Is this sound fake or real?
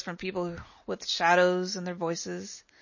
real